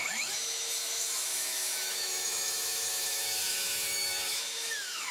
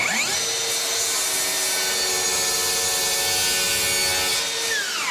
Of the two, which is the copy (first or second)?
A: first